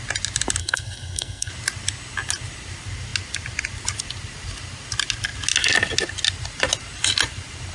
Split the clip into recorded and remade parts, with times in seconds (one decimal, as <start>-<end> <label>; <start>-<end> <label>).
0.0-0.6 recorded; 0.6-1.5 remade; 1.5-7.7 recorded